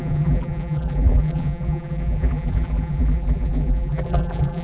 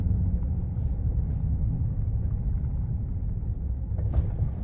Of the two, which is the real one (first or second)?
second